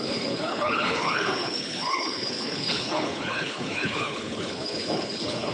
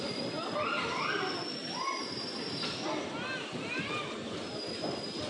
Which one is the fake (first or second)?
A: first